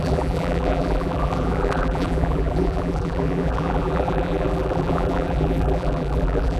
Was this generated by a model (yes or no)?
yes